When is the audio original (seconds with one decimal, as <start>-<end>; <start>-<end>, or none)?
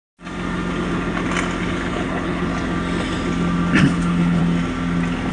0.0-1.7; 2.5-3.8; 4.4-5.3